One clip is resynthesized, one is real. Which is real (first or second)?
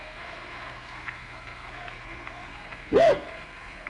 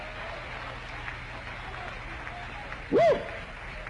second